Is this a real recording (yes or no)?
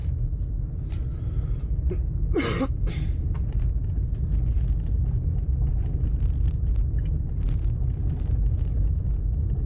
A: yes